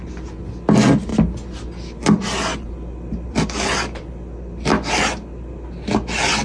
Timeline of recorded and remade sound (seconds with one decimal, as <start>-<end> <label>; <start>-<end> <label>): 0.0-6.4 recorded